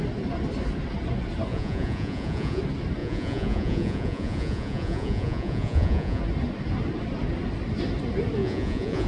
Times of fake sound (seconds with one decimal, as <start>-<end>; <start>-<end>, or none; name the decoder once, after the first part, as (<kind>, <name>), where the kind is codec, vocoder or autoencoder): 1.5-2.6 (vocoder, Vocos); 3.0-6.2; 8.4-9.1